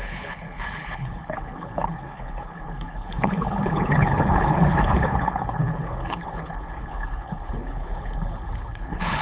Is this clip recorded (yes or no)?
no